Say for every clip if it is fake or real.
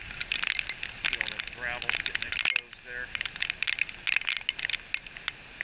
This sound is real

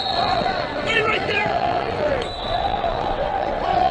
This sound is fake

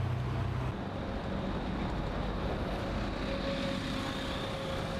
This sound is real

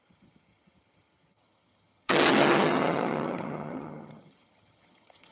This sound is fake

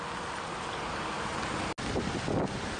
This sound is real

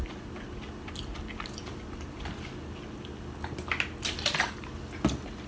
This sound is real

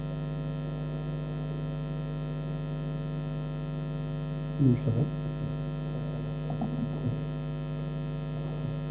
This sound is real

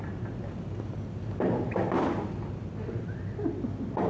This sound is real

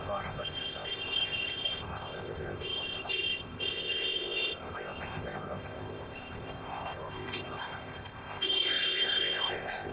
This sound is fake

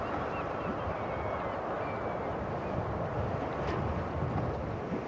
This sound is real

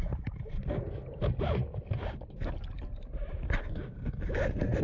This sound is real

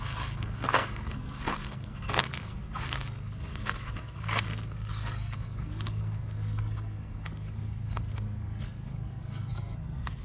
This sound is fake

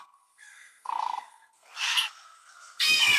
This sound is fake